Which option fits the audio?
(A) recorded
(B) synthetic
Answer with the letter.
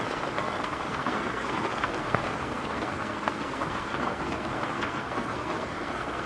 B